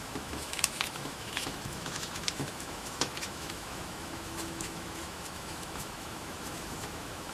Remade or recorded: remade